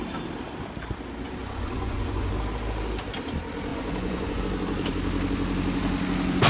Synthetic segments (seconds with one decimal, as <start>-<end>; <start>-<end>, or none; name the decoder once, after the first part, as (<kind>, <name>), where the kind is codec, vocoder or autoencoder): 1.4-2.3 (vocoder, Vocos); 3.7-4.4